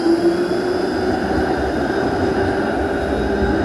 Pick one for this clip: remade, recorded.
recorded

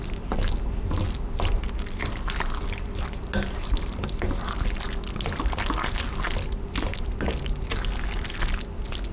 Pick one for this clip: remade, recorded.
recorded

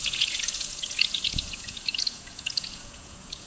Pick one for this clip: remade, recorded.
remade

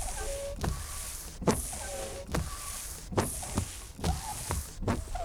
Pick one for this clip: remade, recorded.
recorded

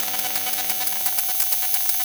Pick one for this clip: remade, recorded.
recorded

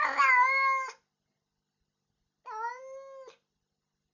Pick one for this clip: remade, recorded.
recorded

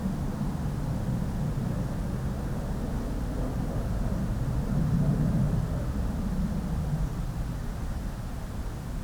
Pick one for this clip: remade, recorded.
recorded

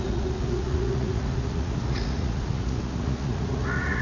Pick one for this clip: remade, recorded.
remade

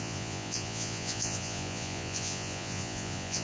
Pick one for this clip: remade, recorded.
remade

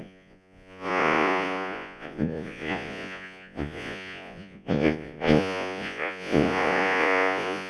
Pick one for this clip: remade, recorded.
remade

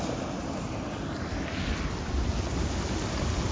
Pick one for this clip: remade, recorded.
recorded